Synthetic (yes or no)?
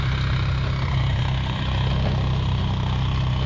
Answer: no